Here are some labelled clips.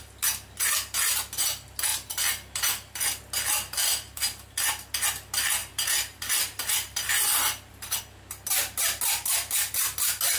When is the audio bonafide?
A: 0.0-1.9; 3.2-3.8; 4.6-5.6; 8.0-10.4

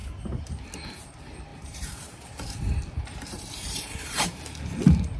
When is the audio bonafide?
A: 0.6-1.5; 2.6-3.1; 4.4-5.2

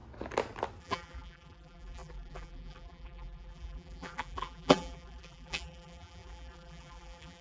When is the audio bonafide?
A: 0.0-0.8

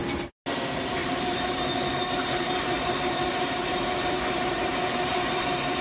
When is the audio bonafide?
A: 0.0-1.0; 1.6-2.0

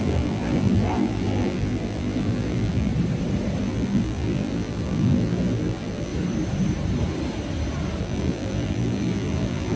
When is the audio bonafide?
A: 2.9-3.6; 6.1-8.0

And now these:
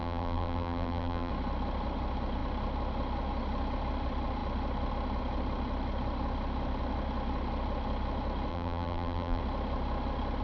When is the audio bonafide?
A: 1.3-8.5; 9.4-10.4